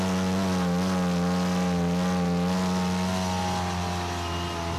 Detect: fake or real real